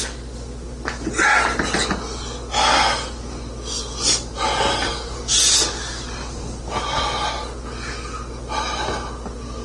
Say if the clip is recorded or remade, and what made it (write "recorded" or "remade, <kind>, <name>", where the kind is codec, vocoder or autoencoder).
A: recorded